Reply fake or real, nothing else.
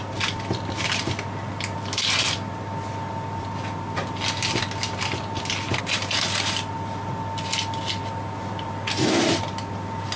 real